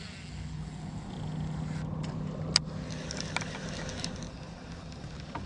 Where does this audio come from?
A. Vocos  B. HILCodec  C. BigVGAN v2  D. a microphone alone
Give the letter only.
D